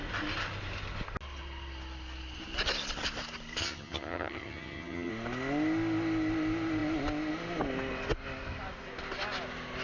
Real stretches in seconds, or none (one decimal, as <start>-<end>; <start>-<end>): 0.0-3.6; 5.1-9.8